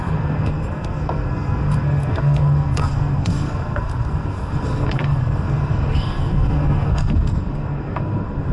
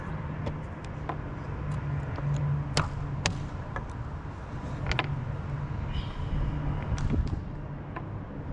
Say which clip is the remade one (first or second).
first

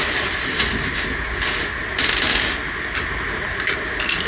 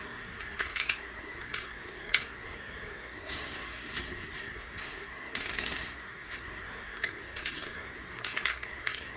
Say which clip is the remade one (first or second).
second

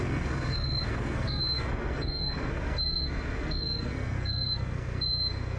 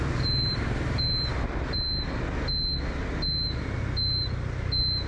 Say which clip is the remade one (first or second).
first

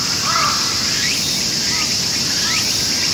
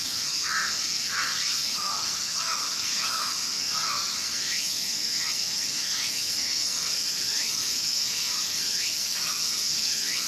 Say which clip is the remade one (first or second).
second